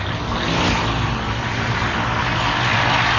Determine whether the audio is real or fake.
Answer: real